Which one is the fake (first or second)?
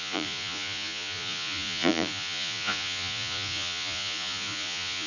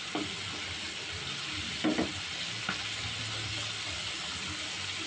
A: first